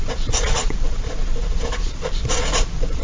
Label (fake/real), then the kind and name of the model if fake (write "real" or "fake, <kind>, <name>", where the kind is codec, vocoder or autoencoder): fake, vocoder, Vocos